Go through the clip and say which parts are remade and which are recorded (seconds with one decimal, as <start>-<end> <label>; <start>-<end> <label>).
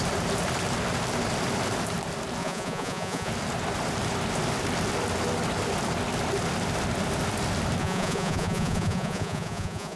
0.0-2.4 recorded; 2.4-3.3 remade; 3.3-7.8 recorded; 7.8-10.0 remade